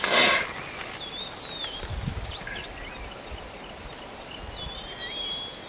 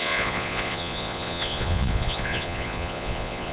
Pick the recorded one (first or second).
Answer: first